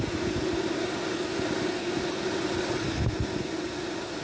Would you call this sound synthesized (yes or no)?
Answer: no